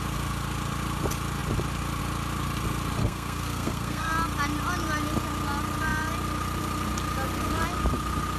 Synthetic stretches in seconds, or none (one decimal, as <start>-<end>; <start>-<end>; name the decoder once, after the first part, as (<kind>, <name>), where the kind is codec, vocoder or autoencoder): 3.0-4.1 (codec, SNAC)